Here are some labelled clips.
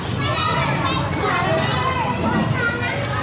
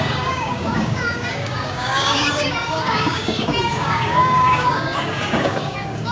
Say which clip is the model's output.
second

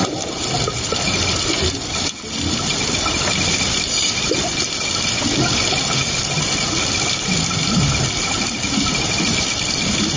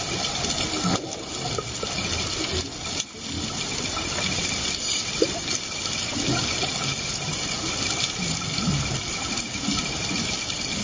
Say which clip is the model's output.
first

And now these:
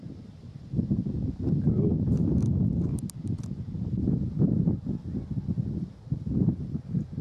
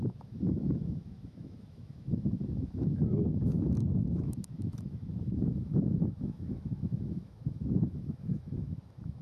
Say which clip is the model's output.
second